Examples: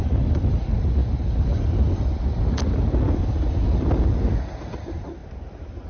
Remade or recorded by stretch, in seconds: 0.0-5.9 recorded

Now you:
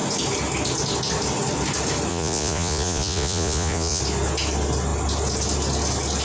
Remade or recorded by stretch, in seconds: 0.0-2.1 recorded; 2.1-4.0 remade; 4.0-6.2 recorded

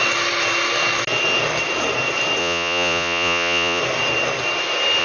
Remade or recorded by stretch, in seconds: 0.0-2.4 recorded; 2.4-3.8 remade; 3.8-5.0 recorded

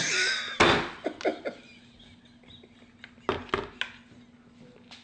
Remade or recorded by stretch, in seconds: 0.0-5.0 recorded

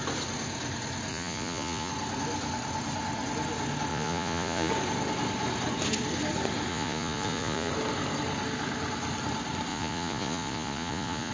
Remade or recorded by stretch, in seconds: 0.0-1.1 recorded; 1.1-1.9 remade; 1.9-3.9 recorded; 3.9-4.7 remade; 4.7-6.7 recorded; 6.7-7.7 remade; 7.7-9.7 recorded; 9.7-11.3 remade